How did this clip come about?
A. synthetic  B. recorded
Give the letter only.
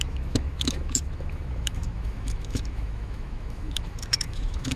A